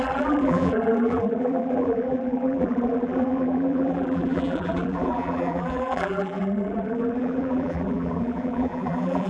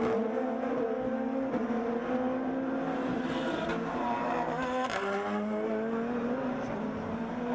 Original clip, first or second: second